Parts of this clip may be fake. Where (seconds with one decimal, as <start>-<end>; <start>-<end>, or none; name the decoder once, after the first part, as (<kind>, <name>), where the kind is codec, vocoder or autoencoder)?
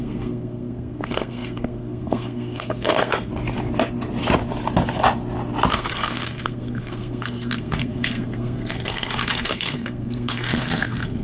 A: 0.0-3.3 (codec, SNAC); 5.7-11.2